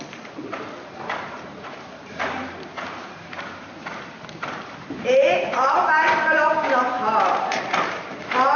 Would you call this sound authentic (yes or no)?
no